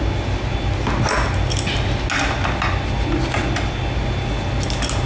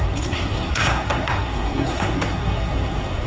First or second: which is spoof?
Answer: second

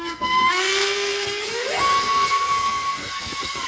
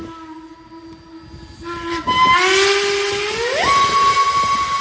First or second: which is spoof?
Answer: first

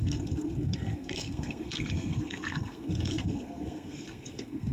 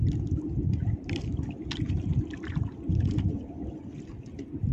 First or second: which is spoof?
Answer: first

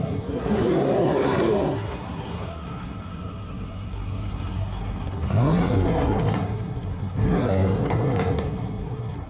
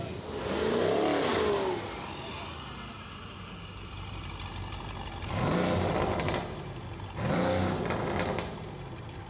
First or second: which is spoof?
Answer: first